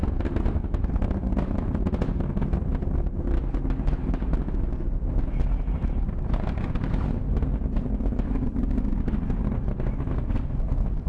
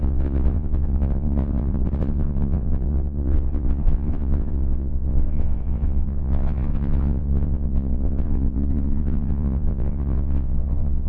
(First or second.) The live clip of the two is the first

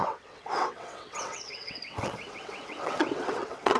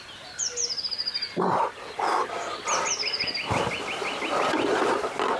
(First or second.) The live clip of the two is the second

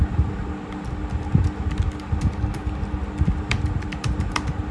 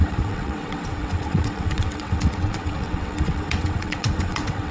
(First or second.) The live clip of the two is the first